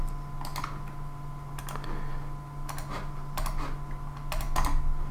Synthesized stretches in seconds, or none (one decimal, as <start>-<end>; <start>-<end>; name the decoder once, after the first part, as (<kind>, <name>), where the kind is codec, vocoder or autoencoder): none

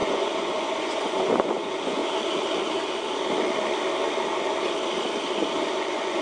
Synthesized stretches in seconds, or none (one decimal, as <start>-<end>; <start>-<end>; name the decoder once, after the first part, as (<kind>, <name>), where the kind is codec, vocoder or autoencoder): 0.0-2.0 (vocoder, Vocos); 5.7-6.2

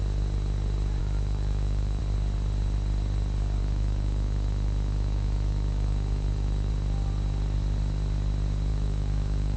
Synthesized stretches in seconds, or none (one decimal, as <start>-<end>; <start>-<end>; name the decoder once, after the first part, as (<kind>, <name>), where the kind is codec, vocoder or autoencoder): 1.0-2.0 (autoencoder, DAC-VAE); 3.6-6.7; 8.7-9.6